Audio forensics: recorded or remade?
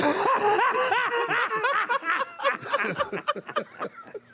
recorded